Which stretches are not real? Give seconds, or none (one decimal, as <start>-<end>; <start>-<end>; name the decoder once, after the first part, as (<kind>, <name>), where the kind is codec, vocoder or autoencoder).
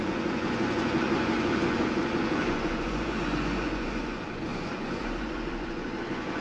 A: 0.0-6.4 (vocoder, Vocos)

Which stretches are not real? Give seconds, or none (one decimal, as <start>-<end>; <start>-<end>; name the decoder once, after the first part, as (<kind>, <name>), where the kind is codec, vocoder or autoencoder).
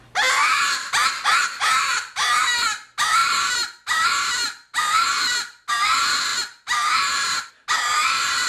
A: none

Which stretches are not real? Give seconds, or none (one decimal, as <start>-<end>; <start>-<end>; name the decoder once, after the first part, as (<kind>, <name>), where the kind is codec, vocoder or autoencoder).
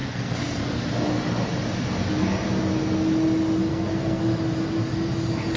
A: 0.0-0.6 (codec, SNAC); 3.7-4.2